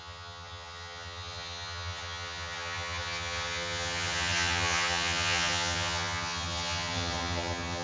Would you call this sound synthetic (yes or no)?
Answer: yes